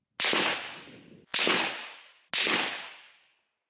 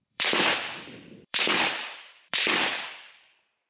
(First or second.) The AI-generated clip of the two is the second